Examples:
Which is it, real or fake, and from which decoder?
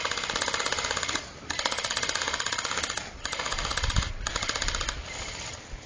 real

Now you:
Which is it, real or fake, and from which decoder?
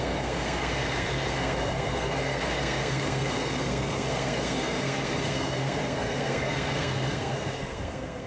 fake, codec, SNAC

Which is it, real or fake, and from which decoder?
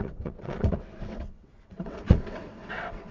fake, vocoder, WaveNeXt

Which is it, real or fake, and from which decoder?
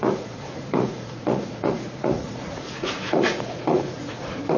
fake, vocoder, Vocos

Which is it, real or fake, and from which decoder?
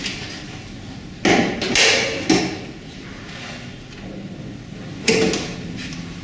real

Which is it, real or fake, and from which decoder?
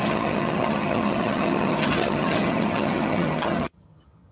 fake, vocoder, HiFi-GAN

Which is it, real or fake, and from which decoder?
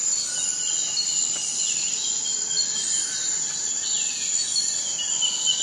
real